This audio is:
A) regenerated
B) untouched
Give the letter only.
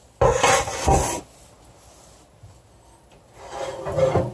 B